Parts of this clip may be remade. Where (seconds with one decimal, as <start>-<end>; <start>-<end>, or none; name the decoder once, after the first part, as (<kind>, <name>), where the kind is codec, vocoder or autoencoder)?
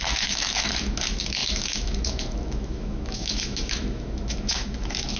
0.0-5.2 (autoencoder, DAC-VAE)